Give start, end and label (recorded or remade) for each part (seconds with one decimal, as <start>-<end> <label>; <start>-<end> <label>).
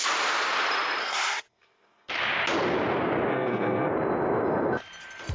0.0-1.0 recorded; 1.0-2.1 remade; 2.1-3.3 recorded; 3.3-3.9 remade; 3.9-5.3 recorded